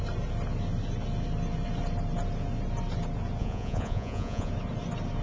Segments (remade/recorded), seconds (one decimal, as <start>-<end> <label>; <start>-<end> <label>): 0.0-3.4 recorded; 3.4-4.5 remade; 4.5-5.2 recorded